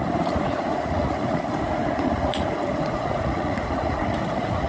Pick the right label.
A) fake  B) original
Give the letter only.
A